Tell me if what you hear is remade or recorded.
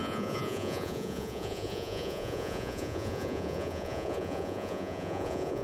remade